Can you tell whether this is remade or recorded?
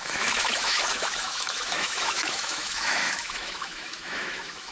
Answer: remade